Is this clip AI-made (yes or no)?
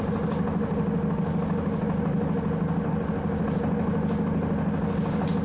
no